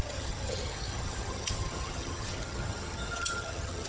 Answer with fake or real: fake